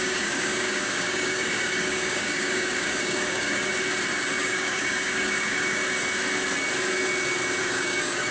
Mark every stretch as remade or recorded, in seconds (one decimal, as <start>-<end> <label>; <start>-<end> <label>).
0.0-3.7 remade; 3.7-4.3 recorded; 4.3-5.8 remade; 5.8-7.6 recorded; 7.6-8.3 remade